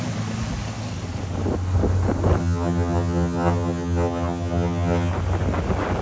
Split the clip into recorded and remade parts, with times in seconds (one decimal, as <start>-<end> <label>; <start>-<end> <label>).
0.0-2.4 recorded; 2.4-5.1 remade; 5.1-6.0 recorded